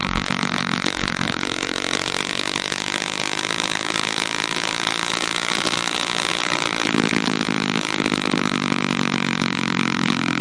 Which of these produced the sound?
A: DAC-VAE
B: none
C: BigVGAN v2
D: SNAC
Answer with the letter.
C